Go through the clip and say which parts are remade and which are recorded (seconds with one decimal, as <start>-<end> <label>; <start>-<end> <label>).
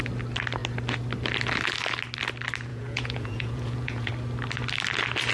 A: 0.0-2.7 recorded; 2.7-4.1 remade; 4.1-5.3 recorded